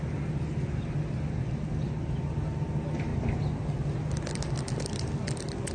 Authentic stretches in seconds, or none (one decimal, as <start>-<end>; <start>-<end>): 0.0-5.7